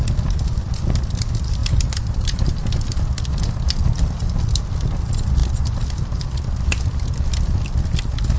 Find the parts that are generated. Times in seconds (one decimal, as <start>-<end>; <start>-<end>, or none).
1.6-2.8